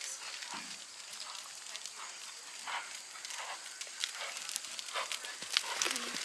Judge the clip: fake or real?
real